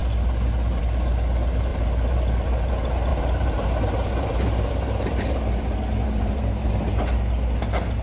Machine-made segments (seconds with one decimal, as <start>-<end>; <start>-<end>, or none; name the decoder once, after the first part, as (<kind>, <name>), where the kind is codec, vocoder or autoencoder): 1.7-2.7 (vocoder, BigVGAN v2); 3.1-7.0